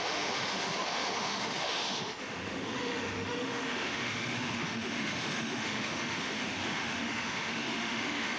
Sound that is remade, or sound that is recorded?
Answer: remade